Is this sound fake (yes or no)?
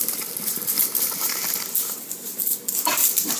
no